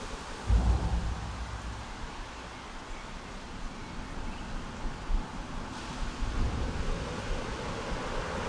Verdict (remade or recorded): recorded